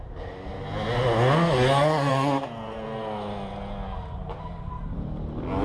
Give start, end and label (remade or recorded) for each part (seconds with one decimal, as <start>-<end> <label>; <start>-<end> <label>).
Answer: 0.0-5.6 recorded